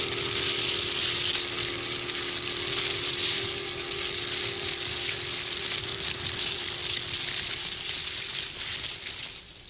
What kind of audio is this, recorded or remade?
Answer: recorded